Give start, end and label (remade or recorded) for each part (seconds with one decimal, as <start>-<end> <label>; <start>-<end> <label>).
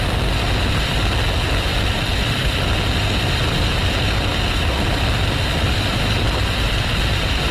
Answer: 0.0-1.7 recorded; 1.7-2.8 remade; 2.8-7.5 recorded